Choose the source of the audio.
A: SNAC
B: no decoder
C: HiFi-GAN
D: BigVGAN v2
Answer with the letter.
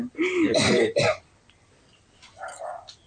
D